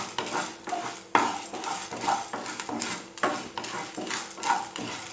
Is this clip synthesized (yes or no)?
no